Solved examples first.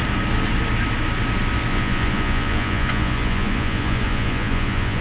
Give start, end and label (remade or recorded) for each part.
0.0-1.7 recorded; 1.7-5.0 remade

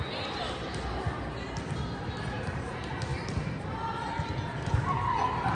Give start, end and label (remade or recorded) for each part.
0.0-5.5 recorded

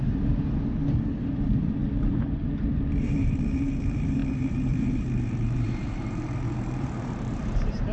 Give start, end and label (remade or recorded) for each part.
0.0-1.8 remade; 1.8-3.0 recorded; 3.0-7.9 remade

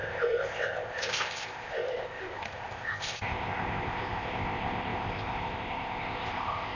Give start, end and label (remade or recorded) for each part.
0.0-6.8 remade

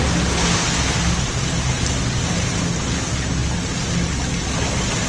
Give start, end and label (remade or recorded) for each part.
0.0-5.1 recorded

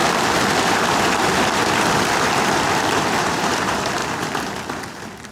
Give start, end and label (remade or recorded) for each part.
0.0-3.2 recorded; 3.2-4.0 remade; 4.0-5.3 recorded

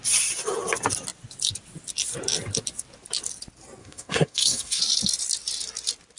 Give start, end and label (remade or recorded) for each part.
0.0-3.8 recorded; 3.8-4.8 remade; 4.8-6.2 recorded